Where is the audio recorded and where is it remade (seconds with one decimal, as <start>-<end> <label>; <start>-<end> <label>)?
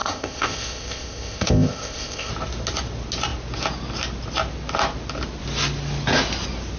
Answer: 0.0-2.3 remade; 2.3-6.8 recorded